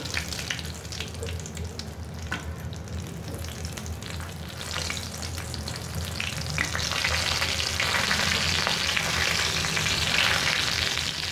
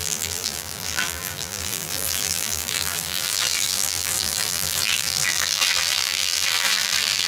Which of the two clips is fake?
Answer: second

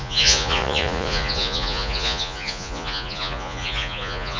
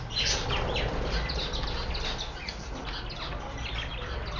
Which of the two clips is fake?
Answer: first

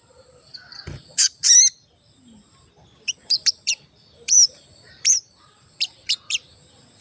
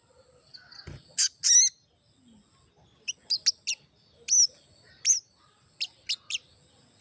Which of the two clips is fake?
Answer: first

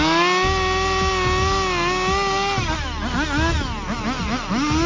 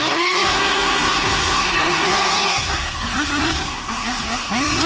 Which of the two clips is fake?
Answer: second